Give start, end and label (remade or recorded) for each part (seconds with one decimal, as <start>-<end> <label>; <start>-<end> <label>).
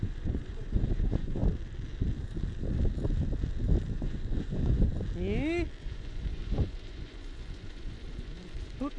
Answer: 0.0-1.4 remade; 1.4-3.9 recorded; 3.9-4.9 remade; 4.9-5.8 recorded; 5.8-9.0 remade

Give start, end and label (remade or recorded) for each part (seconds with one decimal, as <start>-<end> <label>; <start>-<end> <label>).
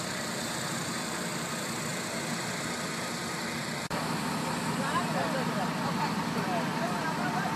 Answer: 0.0-7.6 recorded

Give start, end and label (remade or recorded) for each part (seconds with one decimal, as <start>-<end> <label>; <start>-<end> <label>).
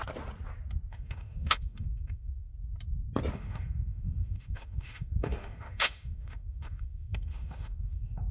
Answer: 0.0-0.9 recorded; 0.9-2.5 remade; 2.5-3.3 recorded; 3.3-8.3 remade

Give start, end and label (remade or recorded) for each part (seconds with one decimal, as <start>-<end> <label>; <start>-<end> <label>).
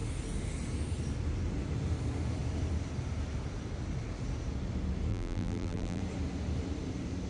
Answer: 0.0-5.1 recorded; 5.1-6.0 remade; 6.0-7.3 recorded